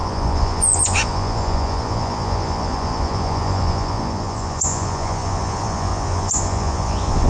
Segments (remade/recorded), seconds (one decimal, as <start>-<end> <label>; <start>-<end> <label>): 0.0-7.3 remade